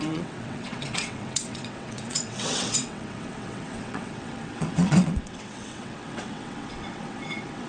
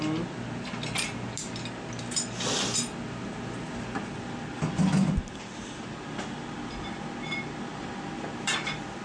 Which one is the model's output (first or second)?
first